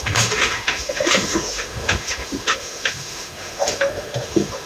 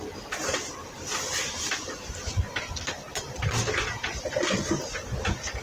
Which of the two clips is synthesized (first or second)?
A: first